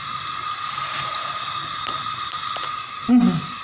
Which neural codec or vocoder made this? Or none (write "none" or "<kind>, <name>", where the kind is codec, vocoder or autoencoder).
none